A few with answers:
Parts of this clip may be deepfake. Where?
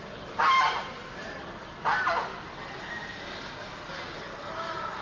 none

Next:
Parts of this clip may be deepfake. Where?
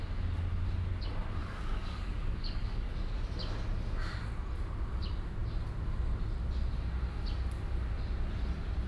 1.4-2.9 (codec, DAC)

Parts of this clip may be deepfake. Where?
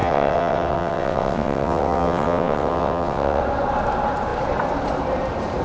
0.0-3.4 (vocoder, WaveNeXt)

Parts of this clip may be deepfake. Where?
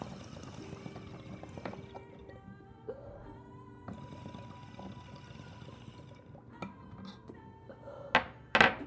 none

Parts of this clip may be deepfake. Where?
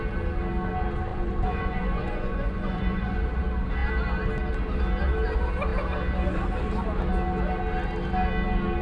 1.1-3.4 (vocoder, Vocos)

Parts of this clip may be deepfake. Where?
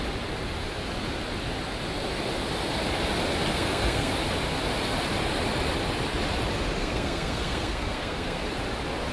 3.5-4.1 (codec, SNAC); 6.8-8.6